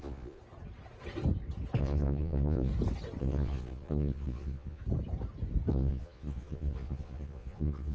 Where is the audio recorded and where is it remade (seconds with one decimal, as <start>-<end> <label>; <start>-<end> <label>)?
0.0-0.4 remade; 0.4-1.8 recorded; 1.8-2.7 remade; 2.7-3.2 recorded; 3.2-4.8 remade; 4.8-5.7 recorded; 5.7-7.9 remade